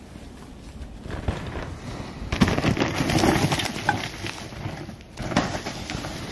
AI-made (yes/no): no